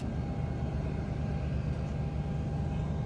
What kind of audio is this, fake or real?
real